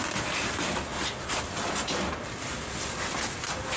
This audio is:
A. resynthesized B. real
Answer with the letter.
B